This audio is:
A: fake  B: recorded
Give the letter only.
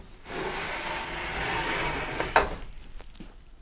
B